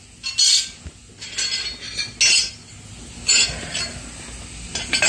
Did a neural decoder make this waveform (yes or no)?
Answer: no